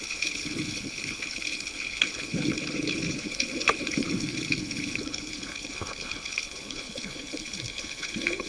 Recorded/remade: remade